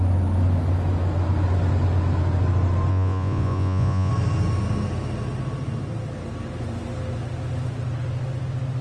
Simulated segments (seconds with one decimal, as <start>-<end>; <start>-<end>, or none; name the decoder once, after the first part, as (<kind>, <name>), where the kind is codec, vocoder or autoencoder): 2.9-4.1 (vocoder, Vocos)